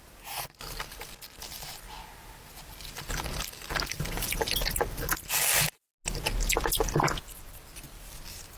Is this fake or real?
real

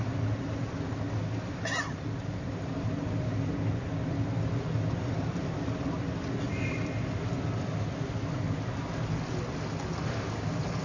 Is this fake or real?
real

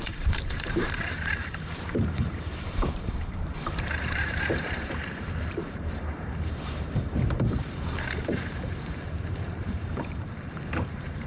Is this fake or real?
fake